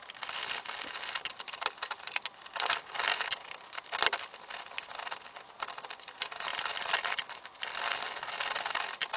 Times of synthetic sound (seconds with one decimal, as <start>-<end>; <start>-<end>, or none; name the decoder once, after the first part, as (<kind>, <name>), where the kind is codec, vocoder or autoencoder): none